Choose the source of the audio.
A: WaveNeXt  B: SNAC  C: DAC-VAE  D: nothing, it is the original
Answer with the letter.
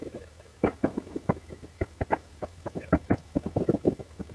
C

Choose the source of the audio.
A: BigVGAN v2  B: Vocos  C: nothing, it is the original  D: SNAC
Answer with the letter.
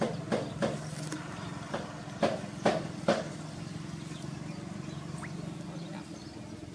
C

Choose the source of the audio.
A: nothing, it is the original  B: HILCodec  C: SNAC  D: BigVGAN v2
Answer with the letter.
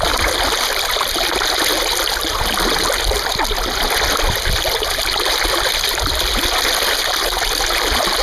A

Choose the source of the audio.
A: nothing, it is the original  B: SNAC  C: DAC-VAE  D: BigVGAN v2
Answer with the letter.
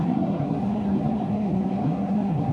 B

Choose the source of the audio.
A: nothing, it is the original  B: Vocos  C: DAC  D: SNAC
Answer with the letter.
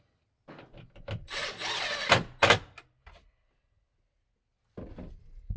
A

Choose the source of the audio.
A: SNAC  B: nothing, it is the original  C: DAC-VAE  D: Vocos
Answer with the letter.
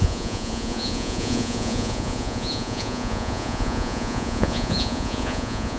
D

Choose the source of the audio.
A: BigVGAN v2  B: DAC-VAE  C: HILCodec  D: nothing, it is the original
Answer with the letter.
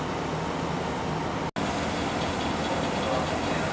D